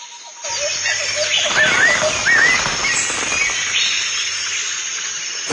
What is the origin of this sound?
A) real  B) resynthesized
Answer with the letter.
A